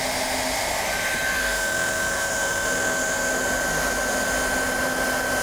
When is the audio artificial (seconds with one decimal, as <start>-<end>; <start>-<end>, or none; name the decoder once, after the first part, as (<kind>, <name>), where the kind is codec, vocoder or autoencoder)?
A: 1.4-3.3 (autoencoder, DAC-VAE)